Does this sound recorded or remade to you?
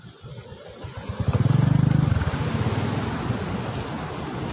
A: recorded